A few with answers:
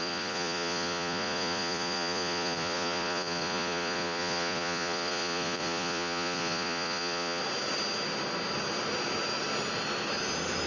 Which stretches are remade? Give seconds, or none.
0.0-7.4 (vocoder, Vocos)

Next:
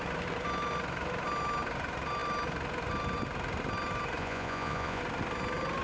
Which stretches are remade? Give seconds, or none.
4.2-5.0 (vocoder, Vocos)

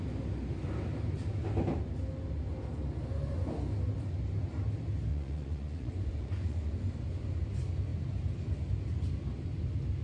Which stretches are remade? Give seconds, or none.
5.1-6.7 (vocoder, Vocos)

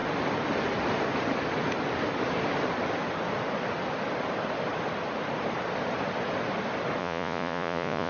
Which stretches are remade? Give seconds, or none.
7.0-8.1 (vocoder, Vocos)

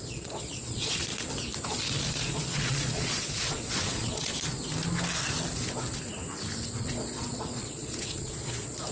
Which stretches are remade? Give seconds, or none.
0.0-1.1 (vocoder, Vocos); 2.1-4.3; 6.8-8.9

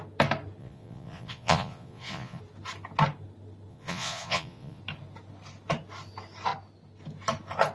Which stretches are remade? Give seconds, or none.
0.6-2.4 (vocoder, Vocos); 3.7-4.8

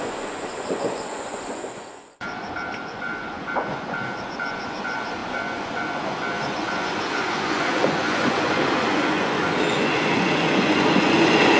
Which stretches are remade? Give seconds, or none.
0.0-11.6 (vocoder, Vocos)

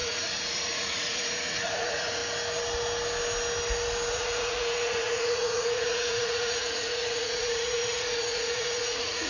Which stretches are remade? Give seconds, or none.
0.0-2.2 (vocoder, Vocos); 4.1-9.3